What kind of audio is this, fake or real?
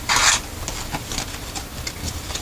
real